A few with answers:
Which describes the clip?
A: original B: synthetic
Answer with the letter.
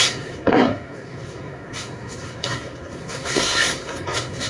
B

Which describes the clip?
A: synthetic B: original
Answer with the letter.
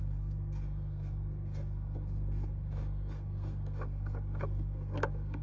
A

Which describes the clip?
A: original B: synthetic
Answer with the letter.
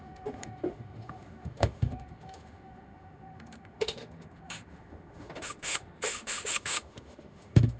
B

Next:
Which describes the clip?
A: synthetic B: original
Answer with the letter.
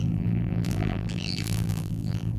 A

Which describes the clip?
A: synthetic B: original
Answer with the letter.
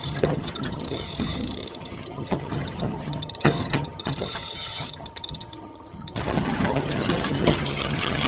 A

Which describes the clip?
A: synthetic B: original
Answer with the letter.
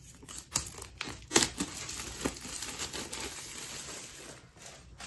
B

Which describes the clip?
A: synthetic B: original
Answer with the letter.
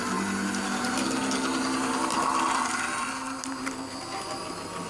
B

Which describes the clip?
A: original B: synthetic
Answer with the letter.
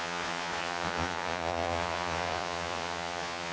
B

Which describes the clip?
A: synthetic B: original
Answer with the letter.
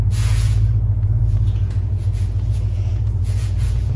A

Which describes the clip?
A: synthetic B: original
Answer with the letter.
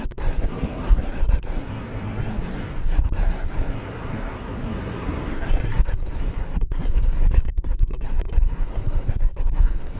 A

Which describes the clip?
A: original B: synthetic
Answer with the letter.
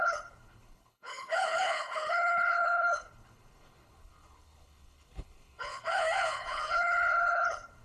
B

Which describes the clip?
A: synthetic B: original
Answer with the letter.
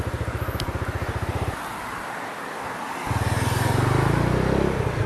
B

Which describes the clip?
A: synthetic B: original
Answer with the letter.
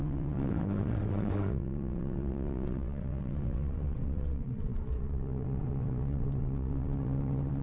A